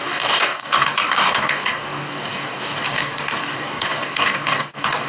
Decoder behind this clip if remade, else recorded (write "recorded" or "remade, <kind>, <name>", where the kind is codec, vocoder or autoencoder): remade, codec, DAC